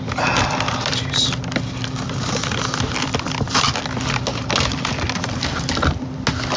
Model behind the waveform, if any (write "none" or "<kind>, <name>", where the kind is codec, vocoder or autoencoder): none